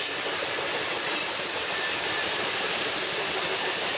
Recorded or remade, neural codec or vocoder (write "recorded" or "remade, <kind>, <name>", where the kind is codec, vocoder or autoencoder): remade, vocoder, BigVGAN v2